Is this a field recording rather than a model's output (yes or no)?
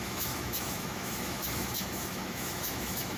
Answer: no